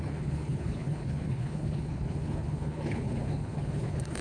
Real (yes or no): no